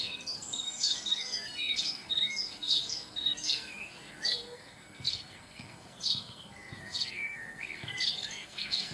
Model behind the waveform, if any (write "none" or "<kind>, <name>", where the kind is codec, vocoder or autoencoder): codec, SNAC